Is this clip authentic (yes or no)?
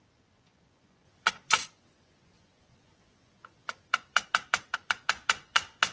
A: no